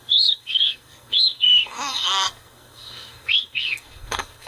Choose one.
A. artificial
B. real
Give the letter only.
A